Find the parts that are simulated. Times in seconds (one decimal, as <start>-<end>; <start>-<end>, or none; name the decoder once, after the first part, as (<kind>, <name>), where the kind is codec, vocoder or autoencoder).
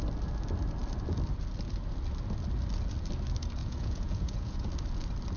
3.6-4.7 (vocoder, Vocos)